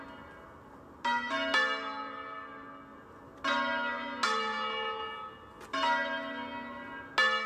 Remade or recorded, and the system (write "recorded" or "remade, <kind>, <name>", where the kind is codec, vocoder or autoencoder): recorded